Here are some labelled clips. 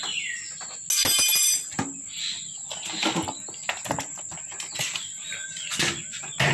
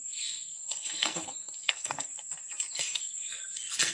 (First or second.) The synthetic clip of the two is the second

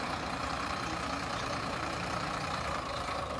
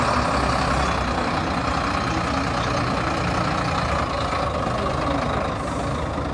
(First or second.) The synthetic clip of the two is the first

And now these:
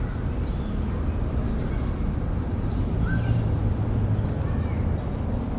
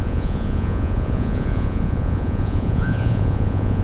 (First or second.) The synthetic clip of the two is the second